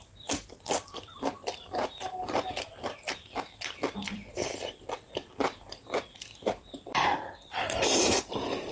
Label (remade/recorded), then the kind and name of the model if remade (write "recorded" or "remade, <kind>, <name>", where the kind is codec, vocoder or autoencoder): remade, vocoder, BigVGAN v2